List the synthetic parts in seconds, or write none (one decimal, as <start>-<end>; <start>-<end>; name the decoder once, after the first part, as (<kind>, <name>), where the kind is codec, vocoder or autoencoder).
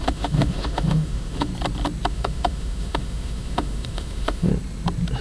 0.0-1.5 (autoencoder, DAC-VAE); 2.1-4.5